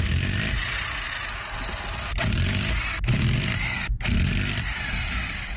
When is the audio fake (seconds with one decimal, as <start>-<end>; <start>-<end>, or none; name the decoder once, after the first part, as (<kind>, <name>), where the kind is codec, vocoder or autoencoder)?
none